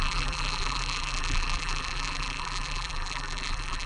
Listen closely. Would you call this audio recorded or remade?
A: remade